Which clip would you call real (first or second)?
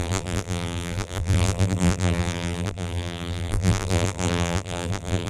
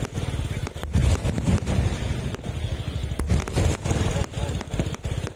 second